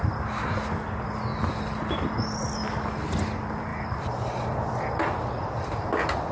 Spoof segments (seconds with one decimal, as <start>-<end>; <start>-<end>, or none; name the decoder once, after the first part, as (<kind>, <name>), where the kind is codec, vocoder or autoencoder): 3.7-5.3 (vocoder, BigVGAN v2)